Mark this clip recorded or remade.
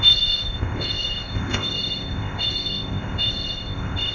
remade